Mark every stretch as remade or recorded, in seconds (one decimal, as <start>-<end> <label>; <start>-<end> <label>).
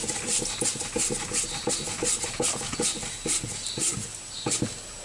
0.0-5.0 recorded